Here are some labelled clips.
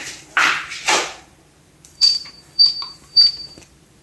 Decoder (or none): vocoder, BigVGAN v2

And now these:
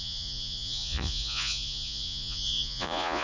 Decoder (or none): vocoder, Vocos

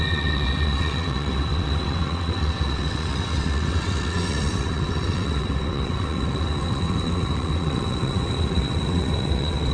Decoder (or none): vocoder, WaveNeXt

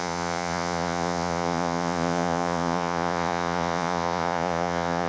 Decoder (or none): vocoder, Vocos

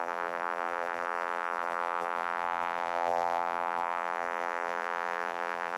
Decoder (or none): vocoder, BigVGAN v2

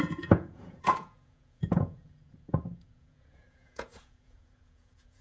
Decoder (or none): vocoder, Vocos